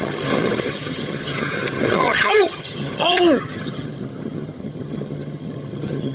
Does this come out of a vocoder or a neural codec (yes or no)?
yes